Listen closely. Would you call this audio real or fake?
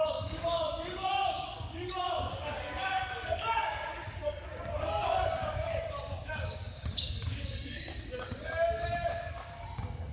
fake